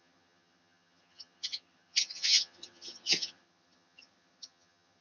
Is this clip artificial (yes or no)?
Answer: yes